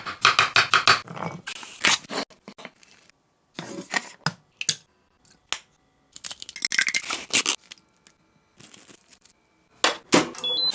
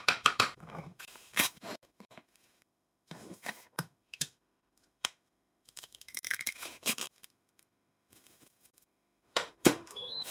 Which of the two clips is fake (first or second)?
second